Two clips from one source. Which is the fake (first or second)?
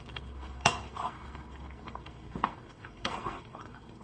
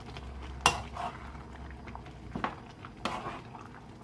first